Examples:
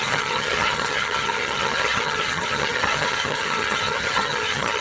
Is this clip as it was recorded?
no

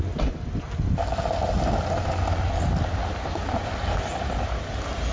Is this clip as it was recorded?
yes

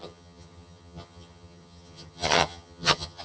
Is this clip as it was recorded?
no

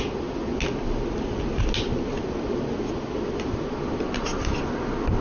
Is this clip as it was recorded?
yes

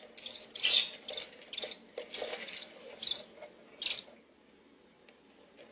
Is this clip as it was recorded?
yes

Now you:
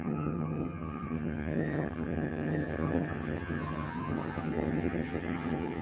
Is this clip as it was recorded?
no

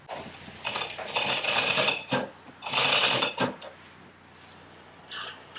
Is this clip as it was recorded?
yes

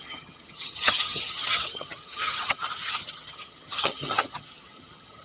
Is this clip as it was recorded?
no